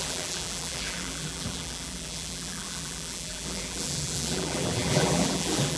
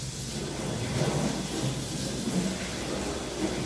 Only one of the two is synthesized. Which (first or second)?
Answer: first